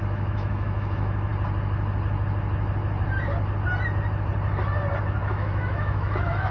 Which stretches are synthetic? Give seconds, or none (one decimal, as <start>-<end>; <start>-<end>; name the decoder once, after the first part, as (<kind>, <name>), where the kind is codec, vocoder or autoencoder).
0.0-1.3 (autoencoder, DAC-VAE); 5.2-6.5